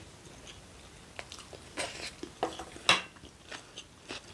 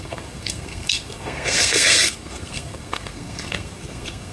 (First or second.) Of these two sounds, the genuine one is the first